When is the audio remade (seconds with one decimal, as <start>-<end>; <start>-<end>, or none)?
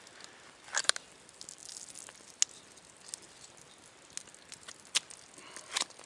none